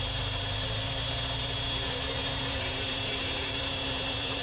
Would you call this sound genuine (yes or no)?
no